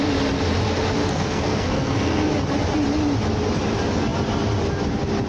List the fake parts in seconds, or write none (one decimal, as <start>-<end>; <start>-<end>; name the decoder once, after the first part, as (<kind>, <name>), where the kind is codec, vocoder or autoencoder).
1.0-2.3 (codec, SNAC)